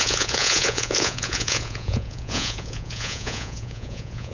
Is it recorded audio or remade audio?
remade